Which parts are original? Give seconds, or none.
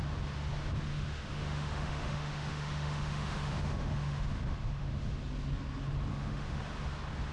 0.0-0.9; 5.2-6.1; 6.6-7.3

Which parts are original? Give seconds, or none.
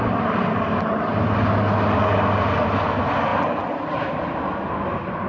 0.0-5.3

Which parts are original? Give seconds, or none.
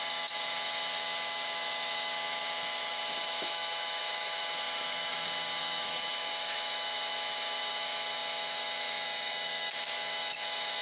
none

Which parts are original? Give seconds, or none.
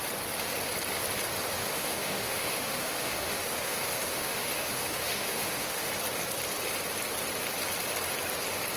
0.0-1.6; 5.9-8.8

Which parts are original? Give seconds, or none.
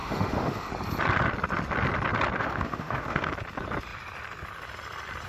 0.7-2.4; 3.3-5.3